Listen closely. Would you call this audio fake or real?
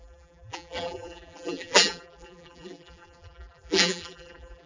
fake